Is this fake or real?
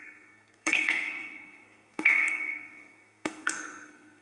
fake